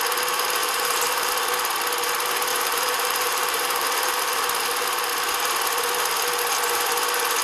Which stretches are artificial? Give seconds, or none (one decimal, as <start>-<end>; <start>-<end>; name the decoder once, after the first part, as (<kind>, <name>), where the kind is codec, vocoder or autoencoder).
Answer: 0.6-1.3 (vocoder, BigVGAN v2); 2.5-4.2